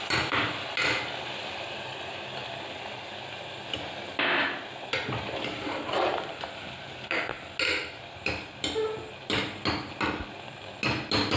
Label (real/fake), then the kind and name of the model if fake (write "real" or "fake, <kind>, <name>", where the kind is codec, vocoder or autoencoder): real